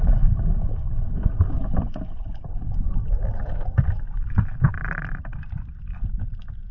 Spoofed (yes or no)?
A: no